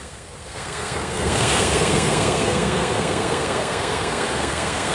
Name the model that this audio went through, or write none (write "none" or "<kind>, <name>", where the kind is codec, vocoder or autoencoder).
codec, SNAC